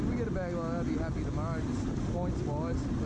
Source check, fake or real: real